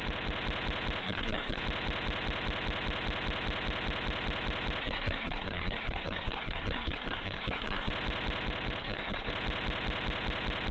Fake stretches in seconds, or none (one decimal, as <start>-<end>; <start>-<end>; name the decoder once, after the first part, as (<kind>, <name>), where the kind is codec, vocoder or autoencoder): 1.0-1.6 (codec, SNAC); 4.8-7.9; 8.8-9.3